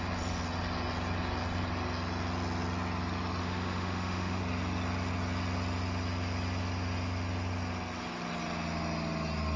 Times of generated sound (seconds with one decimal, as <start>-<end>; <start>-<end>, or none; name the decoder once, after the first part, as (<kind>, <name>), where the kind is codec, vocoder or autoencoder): 3.4-4.4 (autoencoder, DAC-VAE)